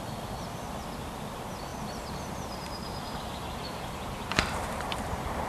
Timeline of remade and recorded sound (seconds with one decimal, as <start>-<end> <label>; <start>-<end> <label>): 0.0-1.7 recorded; 1.7-5.0 remade; 5.0-5.5 recorded